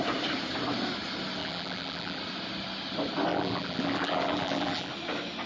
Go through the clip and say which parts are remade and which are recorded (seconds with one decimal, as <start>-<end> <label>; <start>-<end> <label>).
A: 0.0-1.4 recorded; 1.4-2.2 remade; 2.2-3.3 recorded; 3.3-4.9 remade; 4.9-5.5 recorded